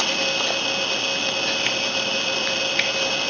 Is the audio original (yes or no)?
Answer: yes